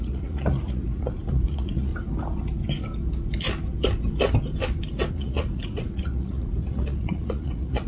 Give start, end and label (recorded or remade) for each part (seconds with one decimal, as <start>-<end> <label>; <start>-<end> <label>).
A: 0.0-1.9 remade; 1.9-5.1 recorded; 5.1-7.9 remade